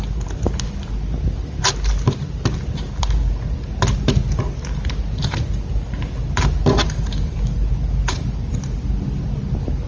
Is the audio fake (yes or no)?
no